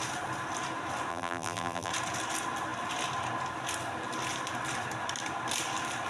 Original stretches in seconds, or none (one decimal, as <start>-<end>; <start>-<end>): 0.0-1.1; 1.9-6.1